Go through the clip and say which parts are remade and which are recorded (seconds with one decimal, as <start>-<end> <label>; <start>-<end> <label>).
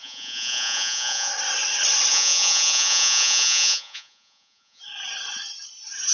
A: 0.0-1.3 remade; 1.3-2.1 recorded; 2.1-4.8 remade; 4.8-6.1 recorded